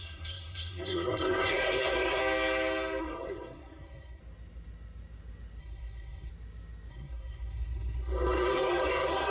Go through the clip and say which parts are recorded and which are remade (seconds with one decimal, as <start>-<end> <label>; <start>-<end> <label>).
0.0-2.2 remade; 2.2-3.0 recorded; 3.0-4.2 remade; 4.2-5.6 recorded; 5.6-6.3 remade; 6.3-6.9 recorded; 6.9-9.3 remade